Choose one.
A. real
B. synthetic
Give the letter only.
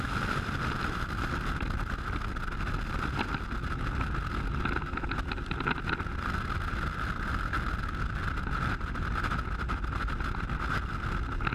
A